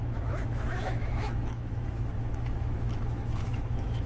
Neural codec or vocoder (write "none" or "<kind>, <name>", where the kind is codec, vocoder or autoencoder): autoencoder, DAC-VAE